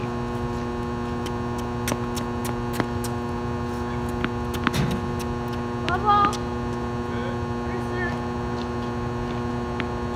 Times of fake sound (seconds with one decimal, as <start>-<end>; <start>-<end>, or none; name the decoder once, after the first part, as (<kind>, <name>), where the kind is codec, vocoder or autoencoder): none

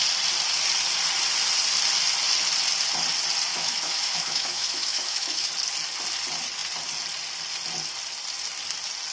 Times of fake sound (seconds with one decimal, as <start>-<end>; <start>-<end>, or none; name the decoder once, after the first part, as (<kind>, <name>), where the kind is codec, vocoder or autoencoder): 3.5-5.5 (autoencoder, DAC-VAE)

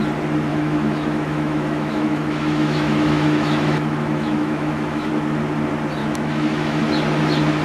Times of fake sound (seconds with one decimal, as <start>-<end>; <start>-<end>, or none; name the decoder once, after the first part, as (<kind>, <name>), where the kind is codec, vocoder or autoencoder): 0.5-5.1 (autoencoder, DAC-VAE); 6.0-6.8

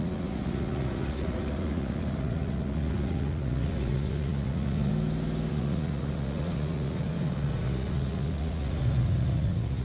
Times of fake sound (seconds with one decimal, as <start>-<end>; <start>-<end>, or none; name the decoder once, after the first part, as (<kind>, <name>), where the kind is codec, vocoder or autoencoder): 0.0-4.9 (vocoder, Vocos); 5.5-9.8

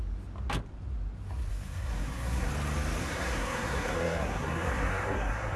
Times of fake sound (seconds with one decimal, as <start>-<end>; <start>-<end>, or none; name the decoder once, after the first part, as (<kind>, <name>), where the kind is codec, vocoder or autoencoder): 1.5-2.5 (codec, SNAC); 3.0-5.6